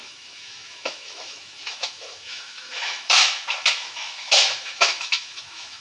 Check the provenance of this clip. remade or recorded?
remade